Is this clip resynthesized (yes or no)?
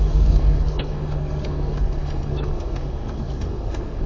yes